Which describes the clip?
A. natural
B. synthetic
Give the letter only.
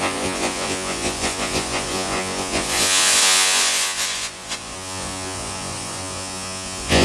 B